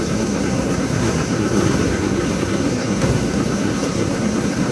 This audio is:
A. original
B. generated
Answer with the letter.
B